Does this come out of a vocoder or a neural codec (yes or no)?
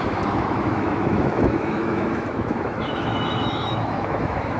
yes